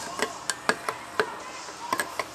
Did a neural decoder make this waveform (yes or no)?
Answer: no